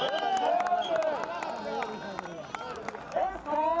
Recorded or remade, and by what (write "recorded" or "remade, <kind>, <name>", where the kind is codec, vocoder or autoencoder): recorded